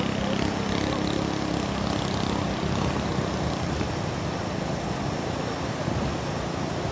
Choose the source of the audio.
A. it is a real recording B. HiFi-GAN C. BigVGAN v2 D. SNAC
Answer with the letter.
A